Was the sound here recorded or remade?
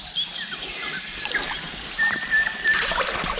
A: recorded